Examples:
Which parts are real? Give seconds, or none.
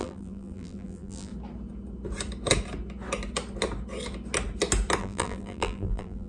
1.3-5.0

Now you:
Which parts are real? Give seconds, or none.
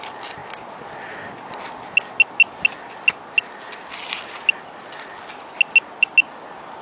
0.0-6.8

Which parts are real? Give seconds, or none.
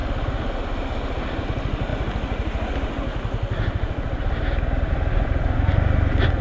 0.0-6.4